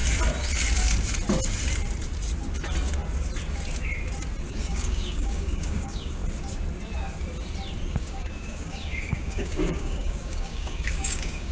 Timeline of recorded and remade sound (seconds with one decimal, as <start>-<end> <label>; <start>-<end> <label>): 0.0-4.5 recorded; 4.5-6.2 remade; 6.2-8.0 recorded; 8.0-11.5 remade